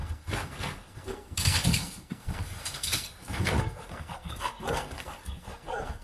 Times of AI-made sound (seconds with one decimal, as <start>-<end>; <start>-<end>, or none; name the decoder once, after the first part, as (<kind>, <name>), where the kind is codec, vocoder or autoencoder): 0.0-6.0 (codec, SNAC)